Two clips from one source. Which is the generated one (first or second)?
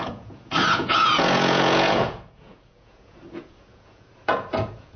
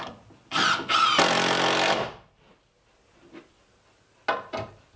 first